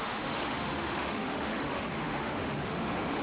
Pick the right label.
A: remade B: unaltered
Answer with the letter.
A